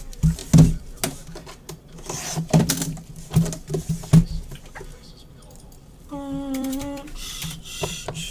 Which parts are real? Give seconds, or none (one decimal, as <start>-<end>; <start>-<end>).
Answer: 0.4-5.3